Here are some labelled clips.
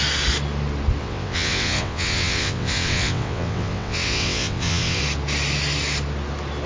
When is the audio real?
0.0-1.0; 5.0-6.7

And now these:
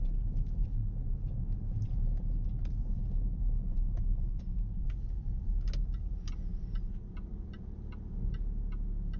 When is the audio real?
0.0-9.2

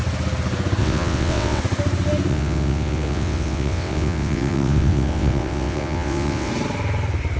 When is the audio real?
0.0-0.8; 1.6-2.3; 6.5-7.4

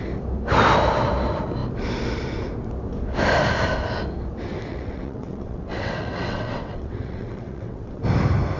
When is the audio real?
0.0-4.7; 8.0-8.6